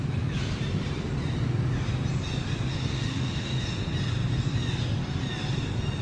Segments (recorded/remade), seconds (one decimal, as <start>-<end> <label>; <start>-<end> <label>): 0.0-2.9 recorded; 2.9-3.6 remade; 3.6-6.0 recorded